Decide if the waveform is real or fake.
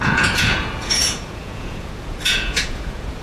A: fake